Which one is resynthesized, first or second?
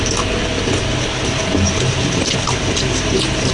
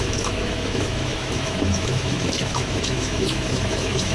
second